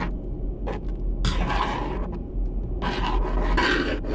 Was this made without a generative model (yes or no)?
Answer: yes